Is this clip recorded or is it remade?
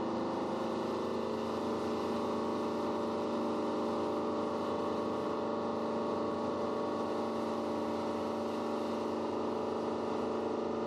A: recorded